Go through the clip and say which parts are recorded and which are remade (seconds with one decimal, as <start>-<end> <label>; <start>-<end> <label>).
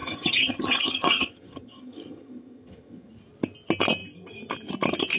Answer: 0.0-3.1 remade; 3.1-5.2 recorded